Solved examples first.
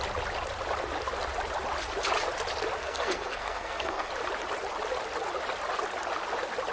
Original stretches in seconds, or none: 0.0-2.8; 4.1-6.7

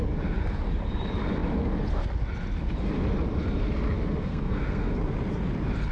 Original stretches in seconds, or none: 0.0-4.2; 4.9-5.9

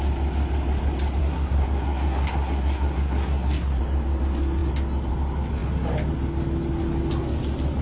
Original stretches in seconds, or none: 0.0-1.2; 3.8-7.8

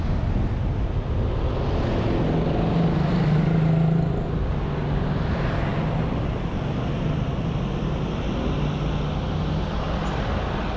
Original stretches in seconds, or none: 0.0-10.8

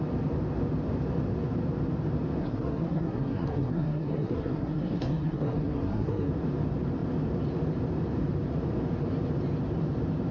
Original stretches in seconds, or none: 0.0-2.4; 6.3-10.3